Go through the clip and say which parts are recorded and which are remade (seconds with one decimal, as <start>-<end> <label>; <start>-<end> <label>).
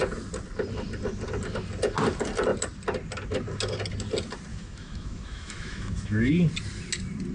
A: 0.0-4.5 recorded; 4.5-6.3 remade; 6.3-7.3 recorded